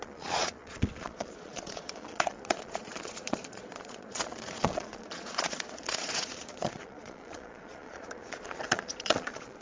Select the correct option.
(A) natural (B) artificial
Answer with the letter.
B